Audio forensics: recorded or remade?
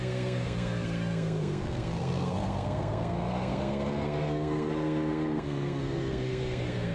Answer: remade